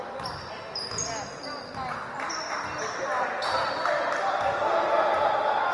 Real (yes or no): yes